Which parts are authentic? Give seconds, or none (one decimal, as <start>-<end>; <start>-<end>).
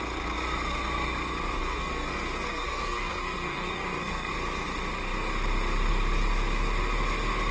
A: 0.0-1.6; 4.3-7.5